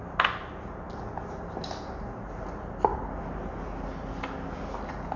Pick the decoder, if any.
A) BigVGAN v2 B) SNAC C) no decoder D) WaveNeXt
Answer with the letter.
C